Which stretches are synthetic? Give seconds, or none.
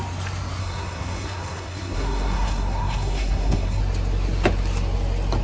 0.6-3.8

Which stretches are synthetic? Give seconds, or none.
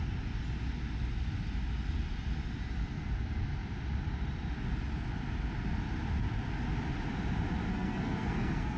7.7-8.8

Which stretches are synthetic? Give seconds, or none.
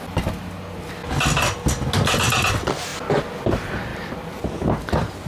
none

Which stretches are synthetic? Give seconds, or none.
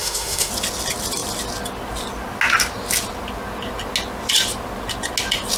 0.0-0.5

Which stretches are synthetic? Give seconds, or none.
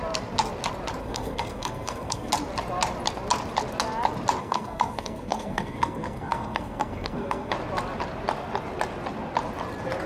1.0-2.3; 4.4-7.5